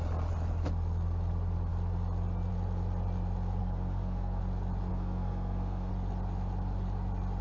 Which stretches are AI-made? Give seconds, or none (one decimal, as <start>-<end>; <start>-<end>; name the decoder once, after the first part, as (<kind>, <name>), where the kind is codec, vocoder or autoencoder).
3.6-4.4 (codec, SNAC); 4.9-5.9